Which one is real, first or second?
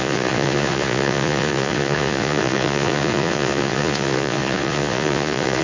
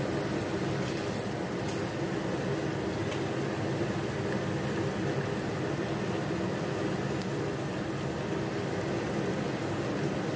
second